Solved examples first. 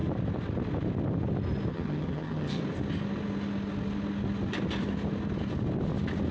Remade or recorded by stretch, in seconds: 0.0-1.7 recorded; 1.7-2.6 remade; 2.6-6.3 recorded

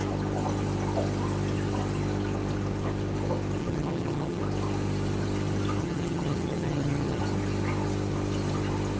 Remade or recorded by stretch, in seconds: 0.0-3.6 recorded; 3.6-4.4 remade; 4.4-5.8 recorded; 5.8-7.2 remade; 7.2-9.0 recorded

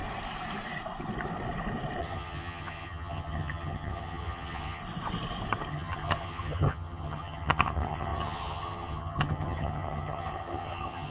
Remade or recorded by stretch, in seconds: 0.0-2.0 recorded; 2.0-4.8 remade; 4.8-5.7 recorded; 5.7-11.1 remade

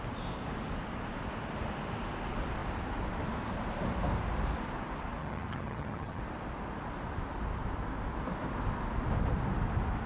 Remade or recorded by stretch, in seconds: 0.0-5.2 recorded; 5.2-6.2 remade; 6.2-10.1 recorded

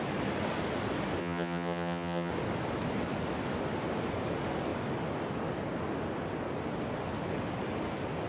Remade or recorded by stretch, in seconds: 0.0-1.2 recorded; 1.2-2.3 remade; 2.3-8.3 recorded

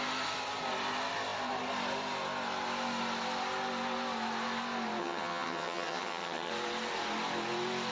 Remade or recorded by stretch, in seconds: 0.0-5.0 recorded; 5.0-6.5 remade; 6.5-7.9 recorded